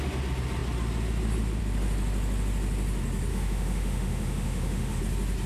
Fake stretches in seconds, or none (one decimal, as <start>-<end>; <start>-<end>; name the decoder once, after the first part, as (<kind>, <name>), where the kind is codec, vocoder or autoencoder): 3.3-5.0 (autoencoder, DAC-VAE)